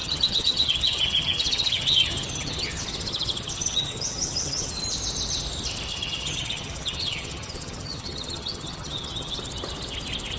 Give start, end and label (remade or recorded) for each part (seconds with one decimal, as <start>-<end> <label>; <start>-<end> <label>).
0.0-4.8 remade; 4.8-5.9 recorded; 5.9-9.4 remade; 9.4-10.4 recorded